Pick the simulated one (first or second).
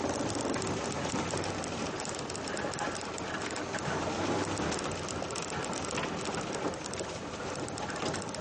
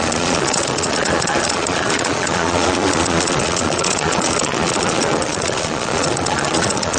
second